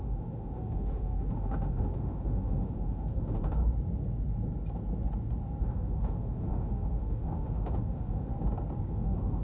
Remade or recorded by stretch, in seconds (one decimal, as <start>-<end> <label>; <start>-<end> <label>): 0.0-3.6 remade; 3.6-5.6 recorded; 5.6-8.3 remade; 8.3-8.9 recorded; 8.9-9.4 remade